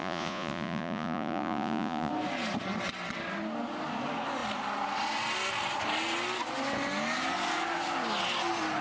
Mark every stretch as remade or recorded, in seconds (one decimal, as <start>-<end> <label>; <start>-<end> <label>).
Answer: 0.0-2.1 remade; 2.1-8.8 recorded

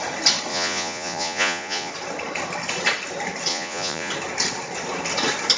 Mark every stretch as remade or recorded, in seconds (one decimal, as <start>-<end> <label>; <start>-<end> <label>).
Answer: 0.0-0.5 recorded; 0.5-1.9 remade; 1.9-3.5 recorded; 3.5-4.1 remade; 4.1-5.6 recorded